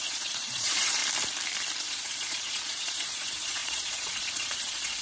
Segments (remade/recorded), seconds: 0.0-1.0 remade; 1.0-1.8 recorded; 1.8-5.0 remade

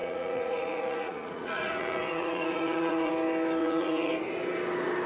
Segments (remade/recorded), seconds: 0.0-3.1 remade; 3.1-3.6 recorded; 3.6-4.1 remade; 4.1-5.1 recorded

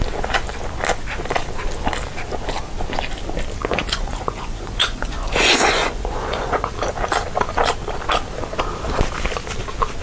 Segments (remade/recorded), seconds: 0.0-3.6 recorded; 3.6-6.7 remade; 6.7-10.0 recorded

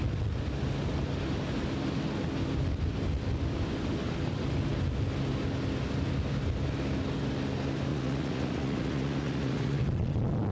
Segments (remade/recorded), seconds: 0.0-7.9 recorded; 7.9-9.8 remade; 9.8-10.5 recorded

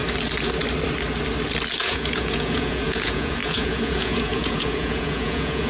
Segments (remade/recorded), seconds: 0.0-1.8 recorded; 1.8-5.7 remade